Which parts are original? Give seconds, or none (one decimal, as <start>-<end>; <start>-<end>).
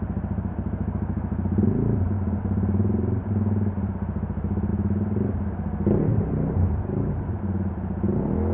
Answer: 0.0-6.1; 7.1-8.5